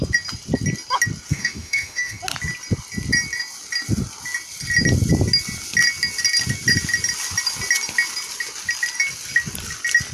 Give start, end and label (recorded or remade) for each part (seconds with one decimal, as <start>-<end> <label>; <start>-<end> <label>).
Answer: 0.0-1.3 recorded; 1.3-2.2 remade; 2.2-10.1 recorded